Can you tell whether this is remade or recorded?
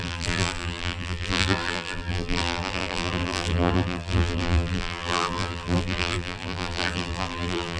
remade